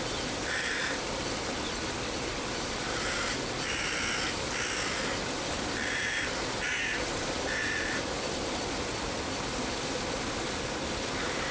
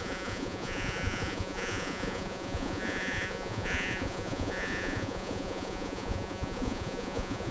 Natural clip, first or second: first